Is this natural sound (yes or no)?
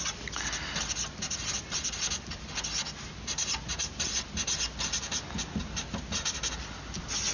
yes